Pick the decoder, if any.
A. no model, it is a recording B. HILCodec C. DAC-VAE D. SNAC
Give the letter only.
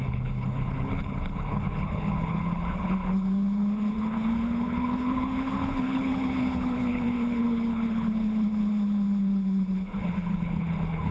B